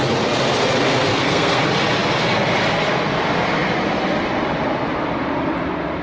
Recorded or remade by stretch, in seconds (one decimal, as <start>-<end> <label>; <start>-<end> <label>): 0.0-1.1 recorded; 1.1-1.6 remade; 1.6-6.0 recorded